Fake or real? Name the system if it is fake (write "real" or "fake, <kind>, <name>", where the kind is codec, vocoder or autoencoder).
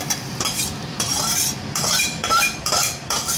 fake, vocoder, BigVGAN v2